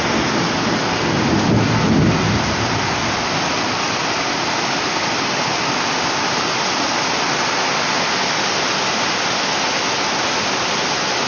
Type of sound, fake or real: real